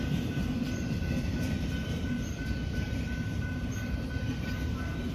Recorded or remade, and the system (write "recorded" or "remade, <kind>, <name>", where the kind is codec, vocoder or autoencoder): remade, vocoder, BigVGAN v2